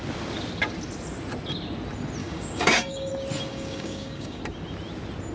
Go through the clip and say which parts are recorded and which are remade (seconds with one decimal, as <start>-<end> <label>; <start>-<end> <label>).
0.0-2.2 recorded; 2.2-3.1 remade; 3.1-3.5 recorded; 3.5-4.4 remade; 4.4-5.3 recorded

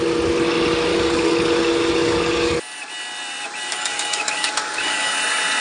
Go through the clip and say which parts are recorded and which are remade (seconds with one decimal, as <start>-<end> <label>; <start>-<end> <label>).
0.0-0.9 recorded; 0.9-2.6 remade; 2.6-3.7 recorded; 3.7-5.1 remade; 5.1-5.6 recorded